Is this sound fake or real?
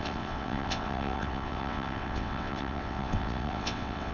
fake